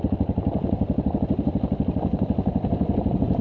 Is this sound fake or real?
fake